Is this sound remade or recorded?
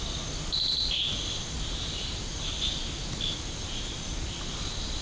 recorded